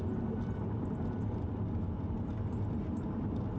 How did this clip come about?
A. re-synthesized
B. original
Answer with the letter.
B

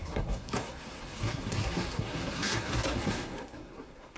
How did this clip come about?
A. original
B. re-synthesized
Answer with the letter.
B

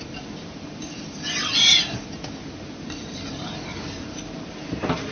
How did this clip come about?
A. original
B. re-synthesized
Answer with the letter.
A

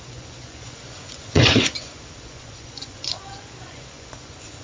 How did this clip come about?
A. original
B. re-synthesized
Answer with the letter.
B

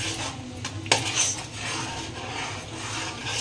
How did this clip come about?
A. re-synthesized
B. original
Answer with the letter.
B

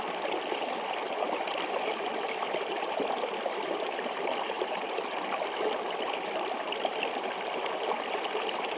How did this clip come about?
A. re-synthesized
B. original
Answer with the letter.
B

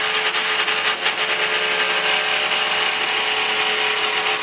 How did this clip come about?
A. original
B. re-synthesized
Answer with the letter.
A